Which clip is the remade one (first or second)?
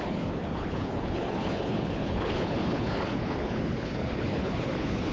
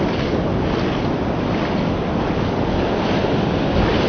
first